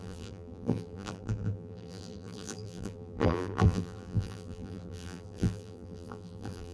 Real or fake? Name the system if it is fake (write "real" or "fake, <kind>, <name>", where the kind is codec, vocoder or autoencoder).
fake, vocoder, BigVGAN v2